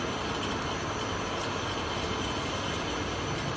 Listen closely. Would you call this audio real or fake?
real